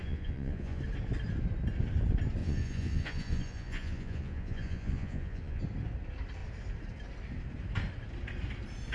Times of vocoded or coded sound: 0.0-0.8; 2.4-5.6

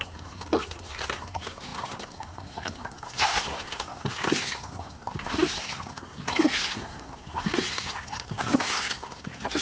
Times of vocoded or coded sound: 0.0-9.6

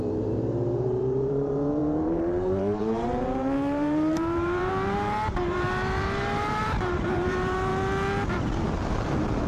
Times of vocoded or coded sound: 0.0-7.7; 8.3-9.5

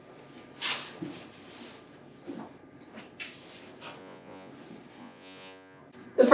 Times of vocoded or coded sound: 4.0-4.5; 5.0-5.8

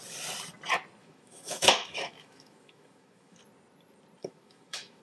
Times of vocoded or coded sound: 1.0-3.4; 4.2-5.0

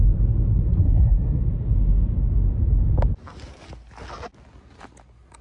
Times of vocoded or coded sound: 0.8-1.4